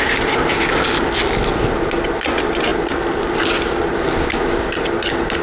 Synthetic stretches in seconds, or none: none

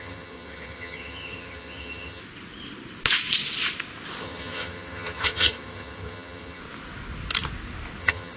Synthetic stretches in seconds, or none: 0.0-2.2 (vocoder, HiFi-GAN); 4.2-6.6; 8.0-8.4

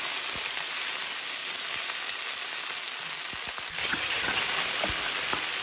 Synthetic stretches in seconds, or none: 3.8-4.4 (vocoder, HiFi-GAN)